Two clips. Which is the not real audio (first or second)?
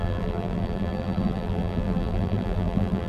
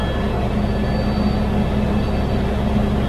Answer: first